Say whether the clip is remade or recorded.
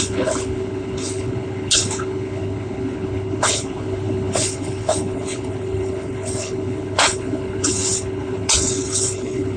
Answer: remade